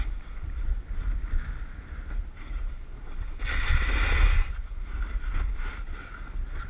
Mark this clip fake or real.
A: real